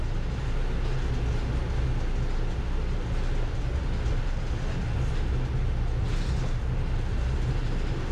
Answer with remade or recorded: recorded